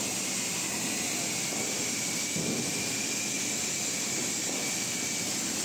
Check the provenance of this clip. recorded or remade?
recorded